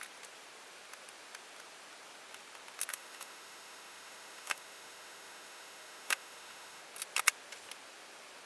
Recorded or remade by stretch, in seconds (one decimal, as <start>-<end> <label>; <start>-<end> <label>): 0.0-2.9 recorded; 2.9-6.8 remade; 6.8-8.5 recorded